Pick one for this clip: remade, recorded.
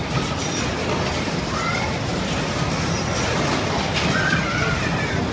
recorded